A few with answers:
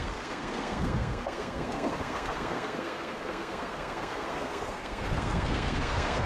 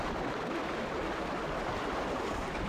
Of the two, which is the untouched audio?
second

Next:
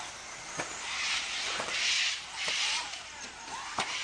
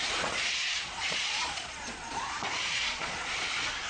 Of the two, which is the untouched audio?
first